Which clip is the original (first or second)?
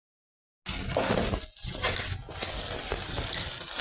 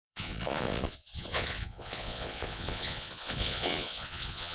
first